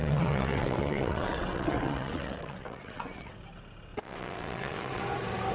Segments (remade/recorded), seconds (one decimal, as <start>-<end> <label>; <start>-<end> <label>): 0.0-3.3 remade; 3.3-3.9 recorded; 3.9-5.0 remade; 5.0-5.5 recorded